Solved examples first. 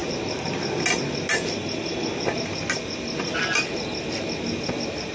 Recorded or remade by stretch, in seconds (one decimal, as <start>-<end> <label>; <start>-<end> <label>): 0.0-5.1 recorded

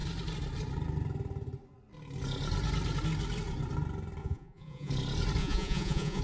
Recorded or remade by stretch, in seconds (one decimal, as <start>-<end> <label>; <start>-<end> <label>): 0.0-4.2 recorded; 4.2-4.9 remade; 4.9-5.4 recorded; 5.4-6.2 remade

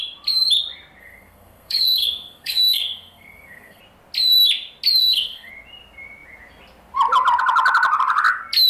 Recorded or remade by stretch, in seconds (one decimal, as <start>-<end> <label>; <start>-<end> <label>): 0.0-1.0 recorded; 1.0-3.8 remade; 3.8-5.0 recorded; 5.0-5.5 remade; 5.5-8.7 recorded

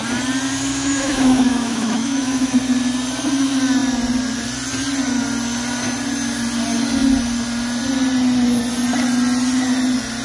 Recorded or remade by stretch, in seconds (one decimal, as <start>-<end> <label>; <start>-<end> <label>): 0.0-0.7 recorded; 0.7-2.5 remade; 2.5-10.2 recorded

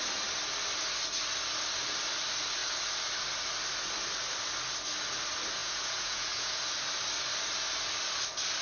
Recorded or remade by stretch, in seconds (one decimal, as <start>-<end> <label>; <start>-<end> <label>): 0.0-5.6 recorded; 5.6-6.6 remade; 6.6-8.6 recorded